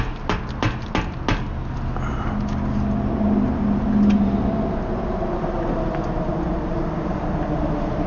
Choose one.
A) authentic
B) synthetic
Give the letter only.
A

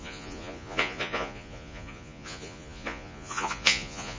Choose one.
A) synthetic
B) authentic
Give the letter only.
A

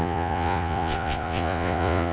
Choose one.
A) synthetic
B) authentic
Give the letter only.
A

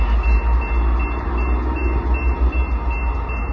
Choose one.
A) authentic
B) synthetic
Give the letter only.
A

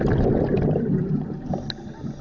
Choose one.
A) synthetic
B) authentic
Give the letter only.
B